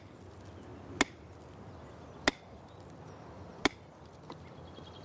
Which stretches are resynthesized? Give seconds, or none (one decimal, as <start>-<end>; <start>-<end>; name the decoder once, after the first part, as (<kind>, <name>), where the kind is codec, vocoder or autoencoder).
none